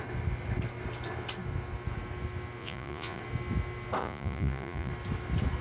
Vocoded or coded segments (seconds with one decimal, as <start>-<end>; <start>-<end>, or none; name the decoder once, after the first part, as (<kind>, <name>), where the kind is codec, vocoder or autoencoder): 2.6-3.2 (vocoder, Vocos); 4.0-4.9